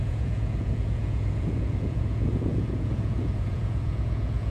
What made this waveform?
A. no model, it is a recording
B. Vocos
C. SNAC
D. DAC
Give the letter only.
B